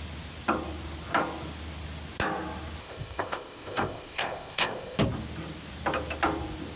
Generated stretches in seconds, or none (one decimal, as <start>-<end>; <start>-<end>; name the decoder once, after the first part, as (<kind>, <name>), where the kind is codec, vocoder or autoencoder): 2.8-5.0 (codec, ZipCodec)